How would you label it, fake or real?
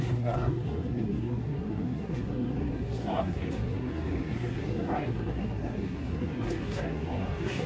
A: fake